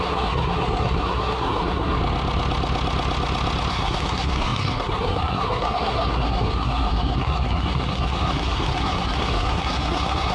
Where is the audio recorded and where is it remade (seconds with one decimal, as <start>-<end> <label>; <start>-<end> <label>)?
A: 0.0-2.0 remade; 2.0-3.7 recorded; 3.7-10.3 remade